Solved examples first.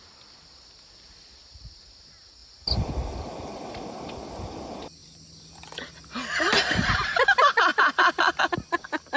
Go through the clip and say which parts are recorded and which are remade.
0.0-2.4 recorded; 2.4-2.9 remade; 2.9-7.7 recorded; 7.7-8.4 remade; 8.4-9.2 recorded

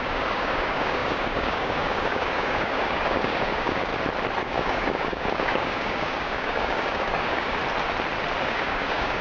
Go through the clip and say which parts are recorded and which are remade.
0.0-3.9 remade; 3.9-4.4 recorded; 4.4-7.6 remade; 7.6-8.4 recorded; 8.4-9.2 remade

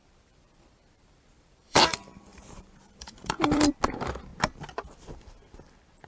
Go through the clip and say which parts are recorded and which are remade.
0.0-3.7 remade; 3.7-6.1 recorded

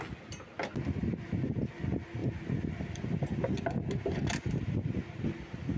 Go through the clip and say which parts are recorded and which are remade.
0.0-5.8 recorded